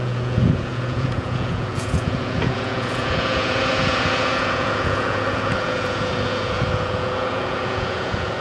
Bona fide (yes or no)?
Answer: no